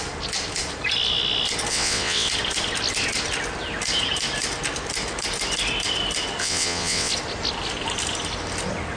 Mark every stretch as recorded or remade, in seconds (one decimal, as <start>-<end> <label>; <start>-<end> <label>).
0.0-1.7 recorded; 1.7-2.3 remade; 2.3-6.4 recorded; 6.4-7.1 remade; 7.1-9.0 recorded